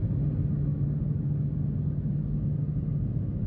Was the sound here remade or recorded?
recorded